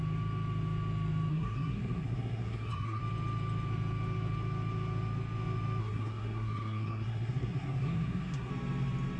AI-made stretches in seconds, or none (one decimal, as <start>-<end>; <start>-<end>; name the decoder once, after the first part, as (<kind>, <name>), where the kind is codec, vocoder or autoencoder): 1.3-3.0 (codec, SNAC); 5.8-8.5